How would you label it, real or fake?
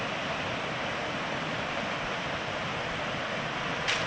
real